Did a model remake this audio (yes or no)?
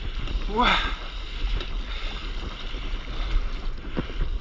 no